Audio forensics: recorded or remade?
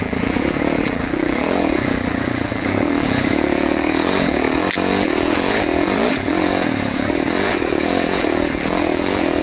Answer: remade